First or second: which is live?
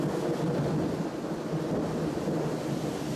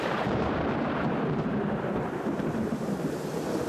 first